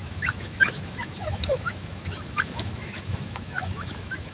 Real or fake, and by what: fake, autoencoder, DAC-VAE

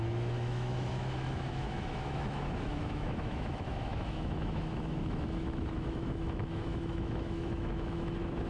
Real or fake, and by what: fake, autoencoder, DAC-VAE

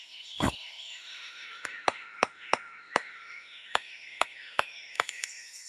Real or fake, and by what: fake, autoencoder, DAC-VAE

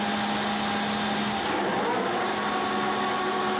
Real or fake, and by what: real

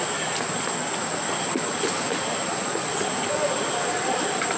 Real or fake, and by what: real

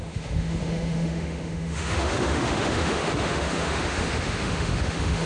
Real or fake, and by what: fake, autoencoder, DAC-VAE